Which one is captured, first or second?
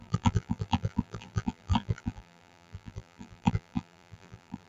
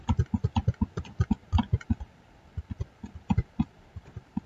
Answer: second